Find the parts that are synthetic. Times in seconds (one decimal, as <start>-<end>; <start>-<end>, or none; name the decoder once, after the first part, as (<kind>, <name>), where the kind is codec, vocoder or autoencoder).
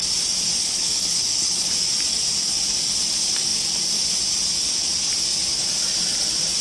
0.6-1.7 (codec, HILCodec)